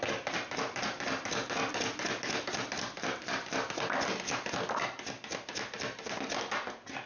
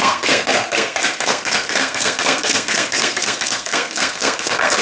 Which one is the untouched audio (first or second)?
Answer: first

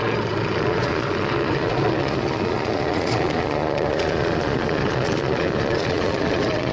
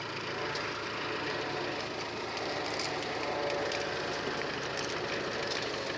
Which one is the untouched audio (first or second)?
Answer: second